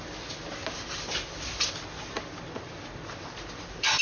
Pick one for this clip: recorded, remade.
recorded